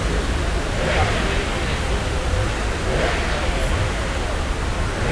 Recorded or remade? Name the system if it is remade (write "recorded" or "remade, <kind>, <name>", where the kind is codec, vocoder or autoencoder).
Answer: recorded